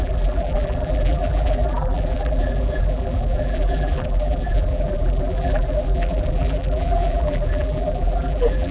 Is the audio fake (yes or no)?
yes